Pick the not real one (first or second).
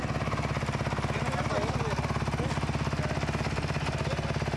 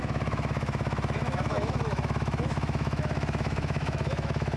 second